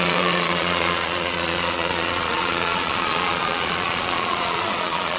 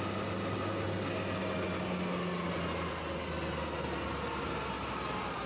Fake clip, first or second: first